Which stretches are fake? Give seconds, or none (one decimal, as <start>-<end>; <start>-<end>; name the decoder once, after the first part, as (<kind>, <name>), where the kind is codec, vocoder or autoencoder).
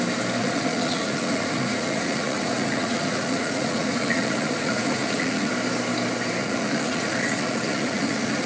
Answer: 0.4-5.5 (vocoder, Vocos); 6.4-8.5